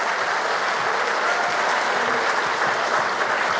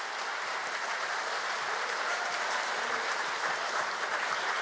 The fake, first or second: second